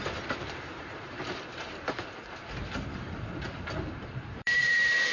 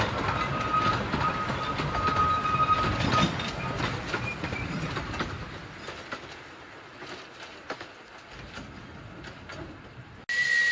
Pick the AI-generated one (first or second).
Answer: first